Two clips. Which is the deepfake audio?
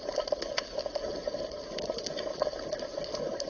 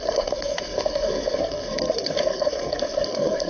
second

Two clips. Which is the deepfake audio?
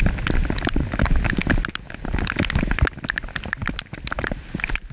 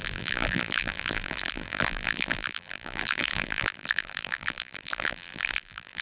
second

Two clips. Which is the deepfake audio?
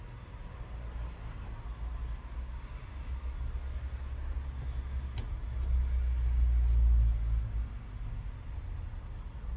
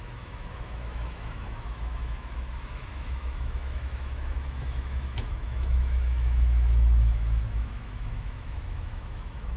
second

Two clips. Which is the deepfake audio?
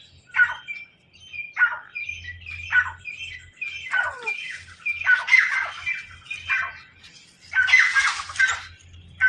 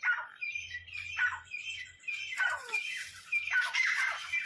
second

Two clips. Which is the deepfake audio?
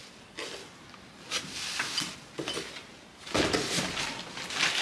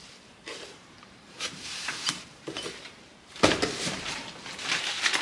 second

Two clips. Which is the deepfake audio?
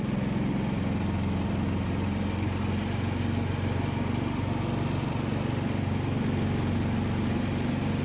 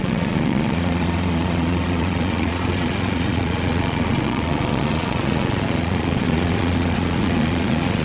second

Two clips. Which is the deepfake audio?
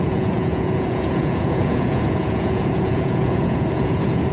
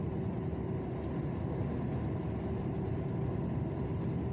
first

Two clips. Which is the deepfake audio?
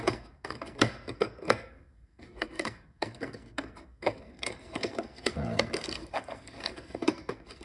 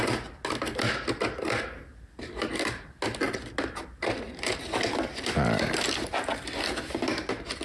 first